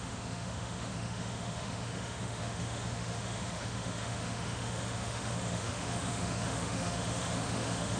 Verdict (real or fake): fake